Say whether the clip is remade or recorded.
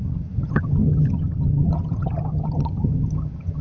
remade